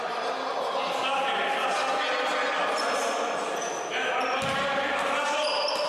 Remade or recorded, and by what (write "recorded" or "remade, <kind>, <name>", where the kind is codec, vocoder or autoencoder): recorded